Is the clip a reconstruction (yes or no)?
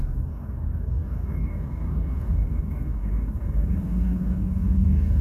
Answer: yes